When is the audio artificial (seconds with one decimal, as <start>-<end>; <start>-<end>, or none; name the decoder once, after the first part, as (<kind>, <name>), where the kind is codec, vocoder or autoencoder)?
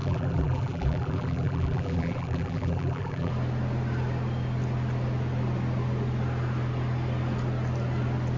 0.0-3.3 (vocoder, BigVGAN v2)